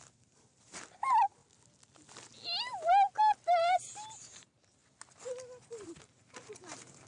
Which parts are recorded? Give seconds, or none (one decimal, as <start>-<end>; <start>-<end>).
1.4-3.2; 4.8-5.7